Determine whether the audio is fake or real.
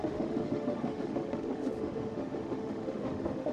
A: fake